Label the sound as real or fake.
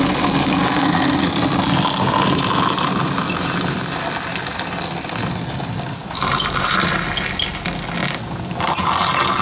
real